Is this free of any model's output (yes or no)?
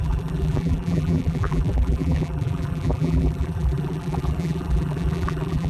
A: no